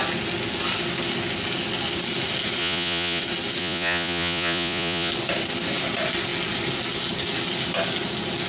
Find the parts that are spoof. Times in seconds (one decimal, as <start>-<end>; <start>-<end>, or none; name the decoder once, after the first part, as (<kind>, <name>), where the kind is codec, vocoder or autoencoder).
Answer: 2.6-3.2 (vocoder, Vocos); 3.6-5.1